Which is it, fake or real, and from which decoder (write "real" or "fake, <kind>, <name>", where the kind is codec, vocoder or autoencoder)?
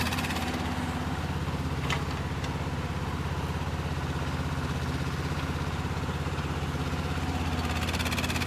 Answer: real